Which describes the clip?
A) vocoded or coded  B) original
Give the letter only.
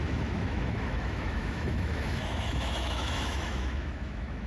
A